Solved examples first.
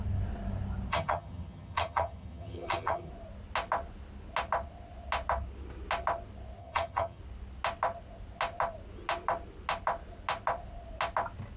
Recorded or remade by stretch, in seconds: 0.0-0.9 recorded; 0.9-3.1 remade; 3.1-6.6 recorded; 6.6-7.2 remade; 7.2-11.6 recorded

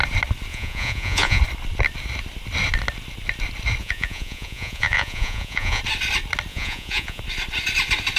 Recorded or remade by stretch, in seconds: 0.0-0.5 recorded; 0.5-1.4 remade; 1.4-3.8 recorded; 3.8-5.8 remade; 5.8-6.5 recorded; 6.5-7.2 remade; 7.2-8.2 recorded